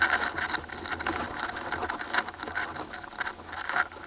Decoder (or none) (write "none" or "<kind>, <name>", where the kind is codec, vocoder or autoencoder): none